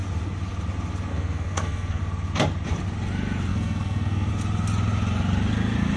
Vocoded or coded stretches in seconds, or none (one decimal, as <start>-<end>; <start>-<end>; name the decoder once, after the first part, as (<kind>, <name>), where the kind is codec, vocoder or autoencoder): 1.1-2.0 (codec, SNAC); 3.5-4.3